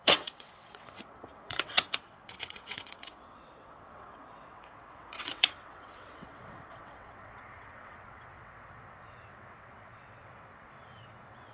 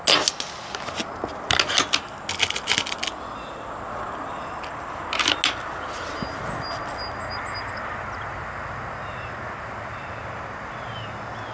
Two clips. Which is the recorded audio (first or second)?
second